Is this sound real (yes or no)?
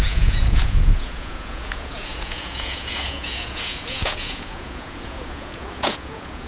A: no